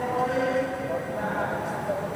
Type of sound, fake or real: real